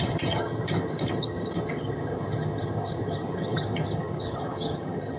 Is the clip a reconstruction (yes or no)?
yes